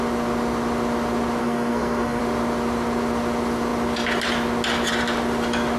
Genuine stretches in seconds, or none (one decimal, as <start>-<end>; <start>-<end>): 0.0-1.4; 2.2-5.8